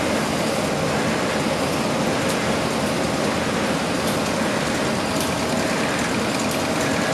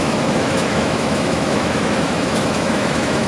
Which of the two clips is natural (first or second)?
first